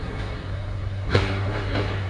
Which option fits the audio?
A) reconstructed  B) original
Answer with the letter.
A